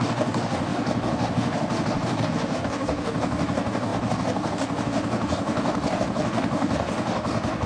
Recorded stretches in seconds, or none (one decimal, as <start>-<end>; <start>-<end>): none